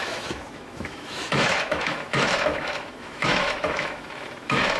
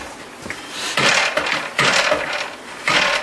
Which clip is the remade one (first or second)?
first